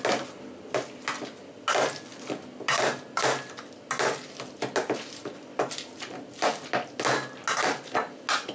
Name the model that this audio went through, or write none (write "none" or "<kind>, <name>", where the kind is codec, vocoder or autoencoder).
none